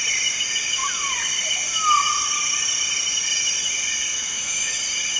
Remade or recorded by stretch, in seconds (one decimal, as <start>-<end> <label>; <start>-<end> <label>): 0.0-4.1 recorded; 4.1-4.7 remade; 4.7-5.2 recorded